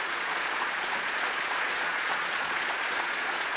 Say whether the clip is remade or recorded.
remade